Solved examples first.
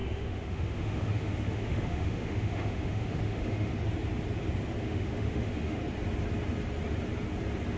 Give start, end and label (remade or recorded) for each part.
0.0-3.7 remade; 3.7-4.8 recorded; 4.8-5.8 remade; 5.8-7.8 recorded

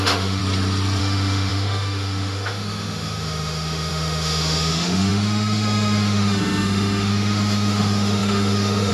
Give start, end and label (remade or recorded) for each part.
0.0-0.4 remade; 0.4-1.0 recorded; 1.0-8.9 remade

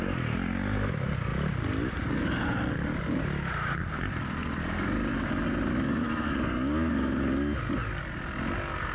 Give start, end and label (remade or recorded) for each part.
0.0-8.9 recorded

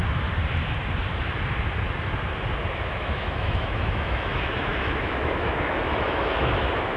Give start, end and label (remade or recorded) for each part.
0.0-2.9 recorded; 2.9-7.0 remade

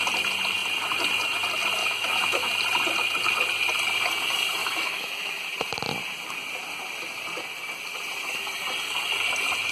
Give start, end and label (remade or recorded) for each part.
0.0-1.8 recorded; 1.8-2.5 remade; 2.5-4.6 recorded; 4.6-5.4 remade; 5.4-9.7 recorded